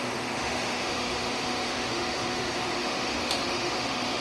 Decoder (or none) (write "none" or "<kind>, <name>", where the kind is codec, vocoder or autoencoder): autoencoder, DAC-VAE